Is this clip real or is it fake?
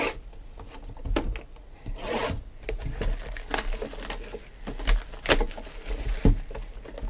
real